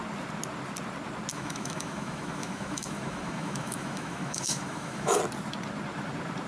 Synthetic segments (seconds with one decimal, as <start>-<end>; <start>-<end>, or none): 1.3-5.2